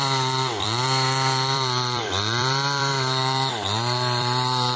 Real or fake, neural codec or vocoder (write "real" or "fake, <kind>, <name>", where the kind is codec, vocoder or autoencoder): fake, vocoder, BigVGAN v2